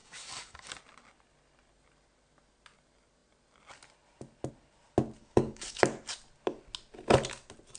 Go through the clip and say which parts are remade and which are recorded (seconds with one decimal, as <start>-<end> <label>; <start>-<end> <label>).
0.0-0.7 remade; 0.7-5.2 recorded; 5.2-5.8 remade; 5.8-7.8 recorded